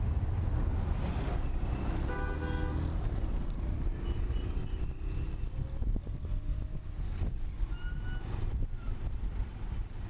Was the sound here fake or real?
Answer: real